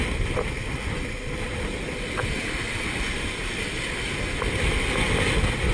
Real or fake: real